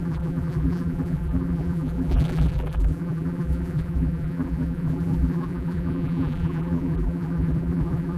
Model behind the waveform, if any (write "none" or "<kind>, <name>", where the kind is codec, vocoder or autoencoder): vocoder, BigVGAN v2